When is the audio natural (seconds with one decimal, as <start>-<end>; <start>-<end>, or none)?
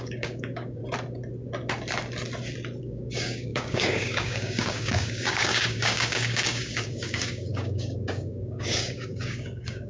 0.8-2.8